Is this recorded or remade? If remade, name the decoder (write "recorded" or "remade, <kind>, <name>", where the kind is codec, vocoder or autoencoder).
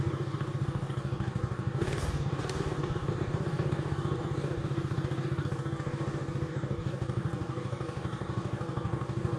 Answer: remade, codec, DAC